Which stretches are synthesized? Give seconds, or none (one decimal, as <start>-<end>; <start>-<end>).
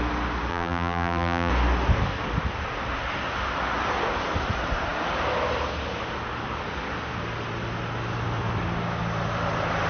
0.5-1.5